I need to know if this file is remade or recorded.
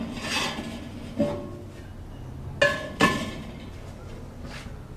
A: recorded